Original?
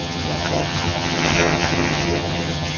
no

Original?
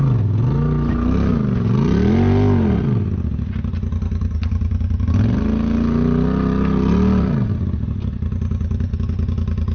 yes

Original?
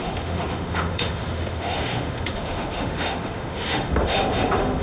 no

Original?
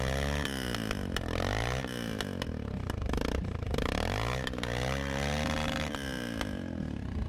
yes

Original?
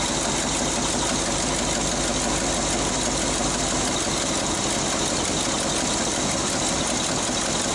yes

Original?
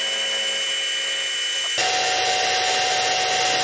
yes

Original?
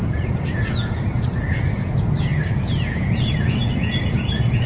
no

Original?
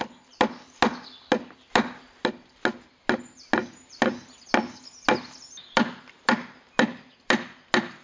yes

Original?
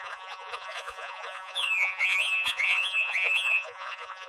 no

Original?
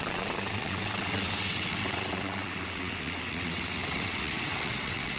no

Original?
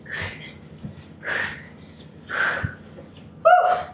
yes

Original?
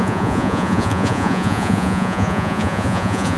no